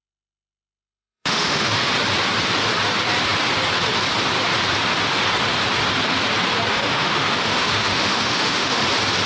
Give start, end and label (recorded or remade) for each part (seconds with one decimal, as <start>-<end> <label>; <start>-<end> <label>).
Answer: 0.0-1.9 remade; 1.9-6.7 recorded; 6.7-8.8 remade; 8.8-9.3 recorded